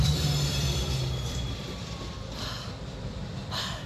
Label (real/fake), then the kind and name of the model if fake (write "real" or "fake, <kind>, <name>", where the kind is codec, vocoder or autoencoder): fake, vocoder, BigVGAN v2